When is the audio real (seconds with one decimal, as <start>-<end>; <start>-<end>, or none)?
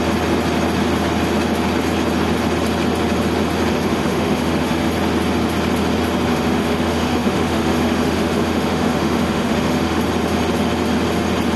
0.0-3.7; 4.9-6.3; 10.0-11.6